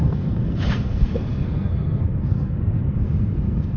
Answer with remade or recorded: remade